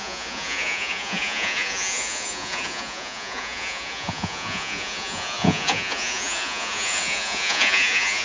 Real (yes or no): no